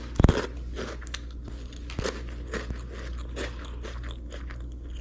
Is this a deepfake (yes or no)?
no